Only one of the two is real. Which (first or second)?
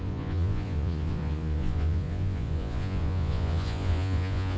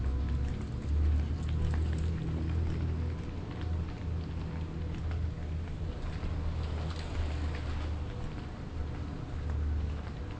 second